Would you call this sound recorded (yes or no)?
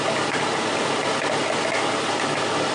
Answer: yes